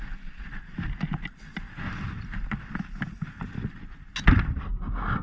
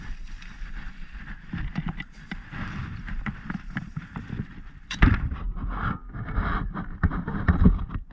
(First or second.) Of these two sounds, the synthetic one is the second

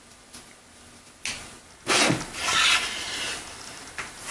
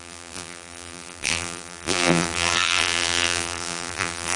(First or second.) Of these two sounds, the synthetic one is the second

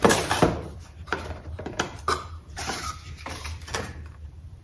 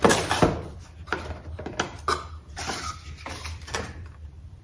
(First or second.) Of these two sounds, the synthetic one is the first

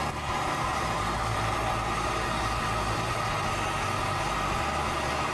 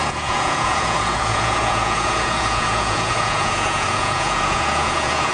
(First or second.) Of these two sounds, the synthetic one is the second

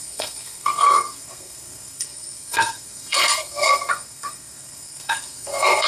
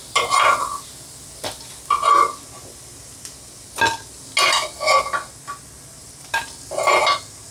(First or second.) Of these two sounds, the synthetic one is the first